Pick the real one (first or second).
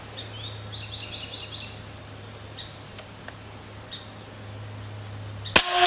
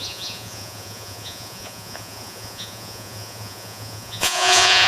first